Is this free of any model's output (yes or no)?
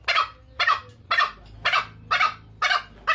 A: yes